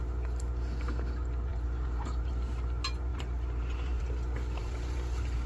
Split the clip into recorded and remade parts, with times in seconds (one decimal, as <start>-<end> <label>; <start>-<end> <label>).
0.0-1.5 recorded; 1.5-2.3 remade; 2.3-3.1 recorded; 3.1-4.0 remade; 4.0-4.6 recorded; 4.6-5.5 remade